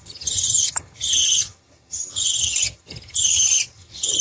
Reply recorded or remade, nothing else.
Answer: remade